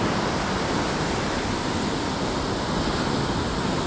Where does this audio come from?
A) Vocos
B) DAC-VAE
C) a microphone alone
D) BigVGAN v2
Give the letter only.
C